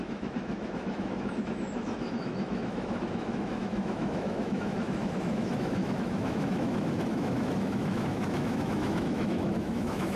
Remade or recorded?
remade